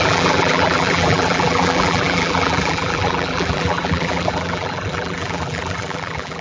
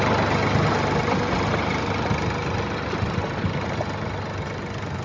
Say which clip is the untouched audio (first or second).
second